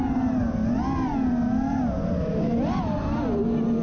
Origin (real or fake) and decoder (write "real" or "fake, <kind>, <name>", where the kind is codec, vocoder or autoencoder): real